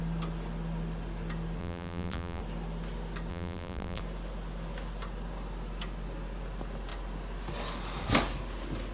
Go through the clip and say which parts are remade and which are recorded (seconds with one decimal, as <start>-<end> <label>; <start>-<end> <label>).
0.0-1.6 recorded; 1.6-2.4 remade; 2.4-3.3 recorded; 3.3-4.0 remade; 4.0-8.9 recorded